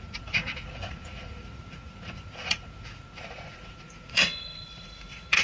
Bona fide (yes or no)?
no